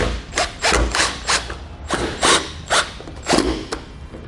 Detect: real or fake real